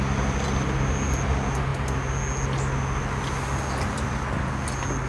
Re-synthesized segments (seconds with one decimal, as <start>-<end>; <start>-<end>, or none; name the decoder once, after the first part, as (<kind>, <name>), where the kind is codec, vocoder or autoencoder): none